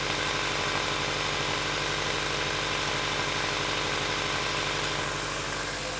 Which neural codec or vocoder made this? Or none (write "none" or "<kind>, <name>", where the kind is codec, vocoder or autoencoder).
none